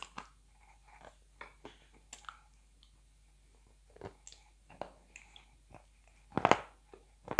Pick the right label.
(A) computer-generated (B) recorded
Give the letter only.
B